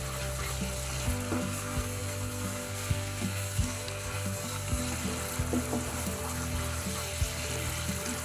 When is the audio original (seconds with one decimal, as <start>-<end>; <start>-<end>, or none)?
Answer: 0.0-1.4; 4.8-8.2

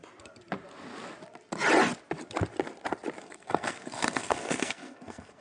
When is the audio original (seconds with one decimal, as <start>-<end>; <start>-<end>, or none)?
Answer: 0.0-3.2

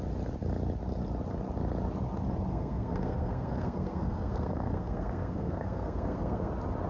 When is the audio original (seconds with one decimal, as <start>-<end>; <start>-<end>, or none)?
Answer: 0.0-2.5; 6.5-6.9